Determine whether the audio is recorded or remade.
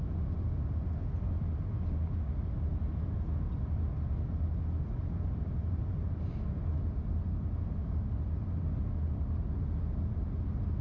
recorded